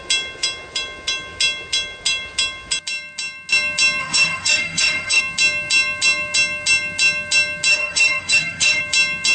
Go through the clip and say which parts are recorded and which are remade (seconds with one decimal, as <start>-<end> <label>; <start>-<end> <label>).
0.0-4.0 recorded; 4.0-5.2 remade; 5.2-7.7 recorded; 7.7-8.8 remade; 8.8-9.3 recorded